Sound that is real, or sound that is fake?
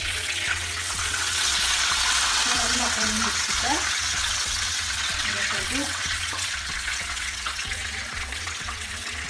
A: fake